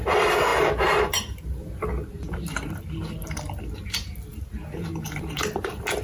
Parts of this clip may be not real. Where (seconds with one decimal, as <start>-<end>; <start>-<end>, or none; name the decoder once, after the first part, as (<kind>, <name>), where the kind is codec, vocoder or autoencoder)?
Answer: none